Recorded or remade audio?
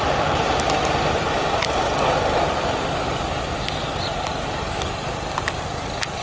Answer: recorded